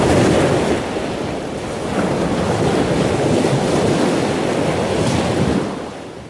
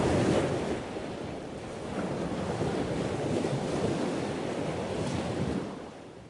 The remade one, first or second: second